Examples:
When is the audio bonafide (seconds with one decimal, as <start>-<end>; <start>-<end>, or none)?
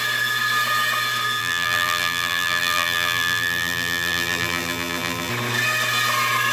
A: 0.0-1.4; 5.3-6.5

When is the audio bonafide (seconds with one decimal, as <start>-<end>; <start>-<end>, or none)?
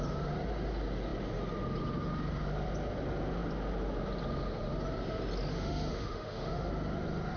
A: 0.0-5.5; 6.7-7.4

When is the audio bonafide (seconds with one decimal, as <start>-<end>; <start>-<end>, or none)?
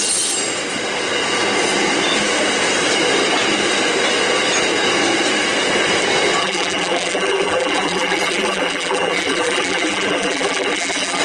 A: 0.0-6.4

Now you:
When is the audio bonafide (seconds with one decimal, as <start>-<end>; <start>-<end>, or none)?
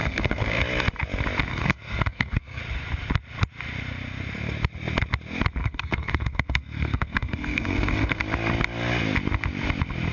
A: 0.6-1.5; 2.6-5.6; 8.2-10.1